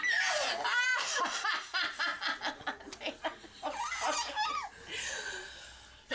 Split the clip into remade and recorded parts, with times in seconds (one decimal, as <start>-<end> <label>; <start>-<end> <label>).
0.0-2.1 remade; 2.1-6.1 recorded